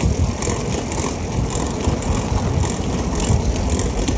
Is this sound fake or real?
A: real